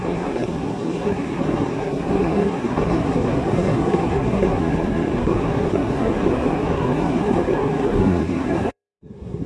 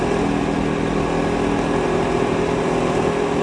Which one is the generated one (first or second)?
first